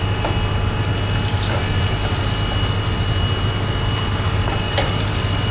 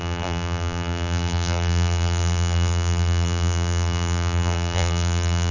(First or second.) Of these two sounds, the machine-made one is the second